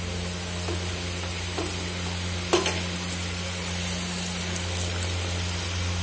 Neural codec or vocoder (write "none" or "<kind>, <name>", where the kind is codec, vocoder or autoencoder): none